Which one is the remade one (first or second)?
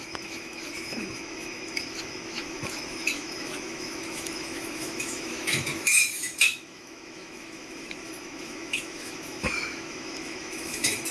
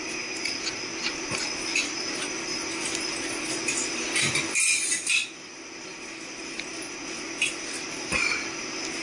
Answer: first